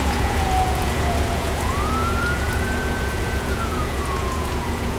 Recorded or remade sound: remade